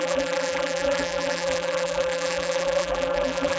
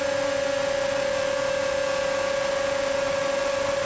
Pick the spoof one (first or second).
first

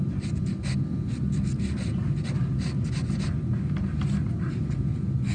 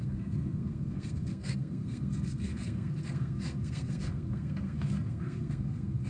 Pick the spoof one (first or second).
second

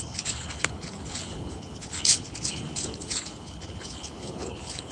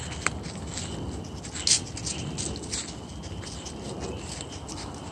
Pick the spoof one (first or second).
first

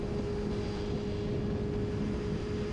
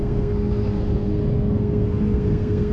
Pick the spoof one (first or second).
second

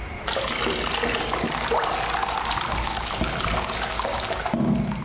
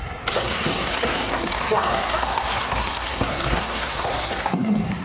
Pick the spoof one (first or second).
second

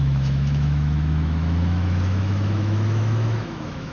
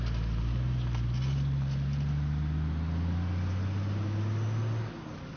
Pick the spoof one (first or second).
first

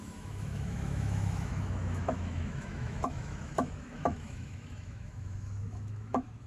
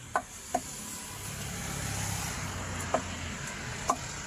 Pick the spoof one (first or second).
first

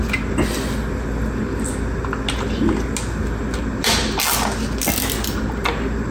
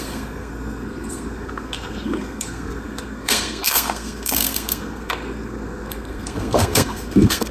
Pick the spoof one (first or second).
second